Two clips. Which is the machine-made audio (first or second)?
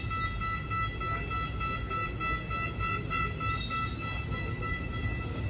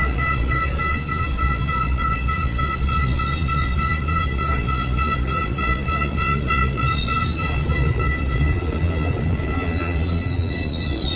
second